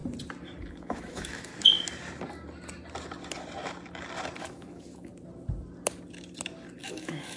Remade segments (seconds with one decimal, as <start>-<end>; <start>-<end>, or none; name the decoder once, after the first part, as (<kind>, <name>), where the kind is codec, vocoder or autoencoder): 0.7-1.5 (autoencoder, DAC-VAE); 4.4-5.1; 6.8-7.4